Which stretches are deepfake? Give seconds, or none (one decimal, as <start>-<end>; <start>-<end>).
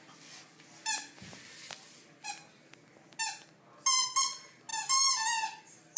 none